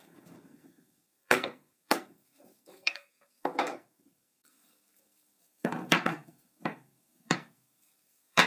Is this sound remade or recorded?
remade